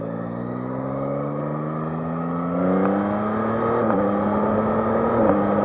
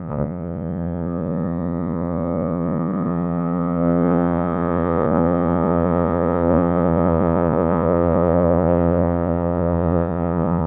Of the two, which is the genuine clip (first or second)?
first